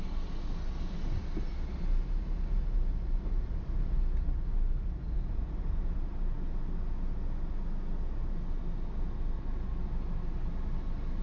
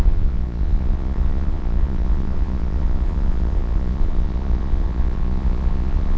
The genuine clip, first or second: first